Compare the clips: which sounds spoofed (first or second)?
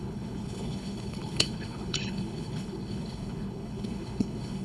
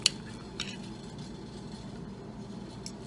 first